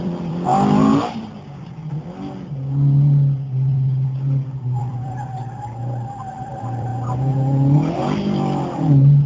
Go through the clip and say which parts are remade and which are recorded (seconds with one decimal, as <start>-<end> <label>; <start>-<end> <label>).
0.0-0.5 remade; 0.5-4.8 recorded; 4.8-6.9 remade; 6.9-7.9 recorded; 7.9-9.3 remade